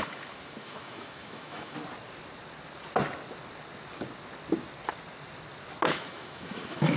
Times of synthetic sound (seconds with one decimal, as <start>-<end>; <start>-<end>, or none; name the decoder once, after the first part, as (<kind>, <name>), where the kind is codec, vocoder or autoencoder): 0.0-1.8 (autoencoder, DAC-VAE); 5.9-7.0